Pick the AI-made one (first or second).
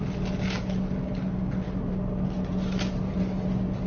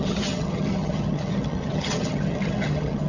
second